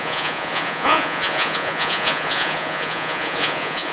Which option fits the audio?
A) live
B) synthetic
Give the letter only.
B